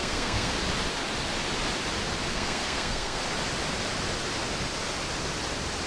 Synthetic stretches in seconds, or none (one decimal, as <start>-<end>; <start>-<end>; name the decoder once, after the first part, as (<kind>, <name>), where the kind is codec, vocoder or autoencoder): 0.0-0.5 (codec, SNAC); 2.3-3.2